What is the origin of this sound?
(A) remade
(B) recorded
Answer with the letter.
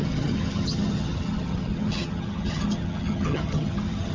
A